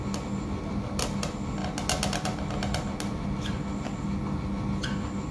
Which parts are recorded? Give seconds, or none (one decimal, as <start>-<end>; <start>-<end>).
0.0-5.3